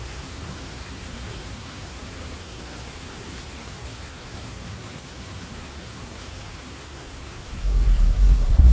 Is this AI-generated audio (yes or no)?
yes